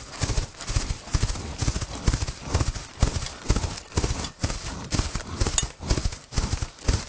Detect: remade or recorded recorded